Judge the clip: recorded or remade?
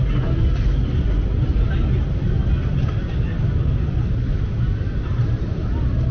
recorded